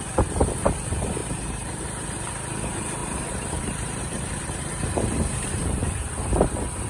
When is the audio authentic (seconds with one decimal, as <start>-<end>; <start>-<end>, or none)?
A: 0.0-1.2; 2.2-3.0; 6.1-6.9